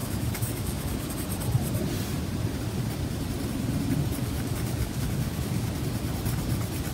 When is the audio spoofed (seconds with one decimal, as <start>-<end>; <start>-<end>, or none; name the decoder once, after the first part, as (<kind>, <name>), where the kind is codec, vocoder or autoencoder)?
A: 0.0-1.1 (codec, DAC); 4.2-5.7